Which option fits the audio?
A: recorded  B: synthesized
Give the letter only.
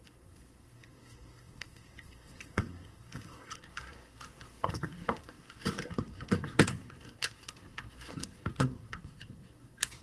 B